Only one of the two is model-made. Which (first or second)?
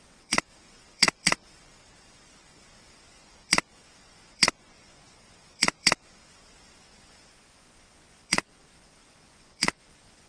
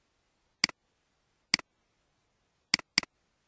first